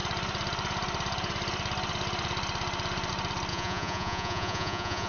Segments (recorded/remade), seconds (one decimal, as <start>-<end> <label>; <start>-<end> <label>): 0.0-3.5 recorded; 3.5-5.1 remade